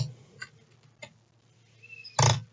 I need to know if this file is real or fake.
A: real